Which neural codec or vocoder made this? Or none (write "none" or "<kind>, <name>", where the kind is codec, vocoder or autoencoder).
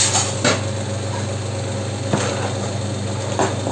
none